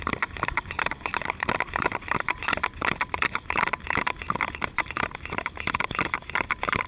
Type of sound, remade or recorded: remade